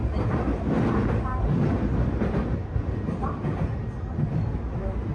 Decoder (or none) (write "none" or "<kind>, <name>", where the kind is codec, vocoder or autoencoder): none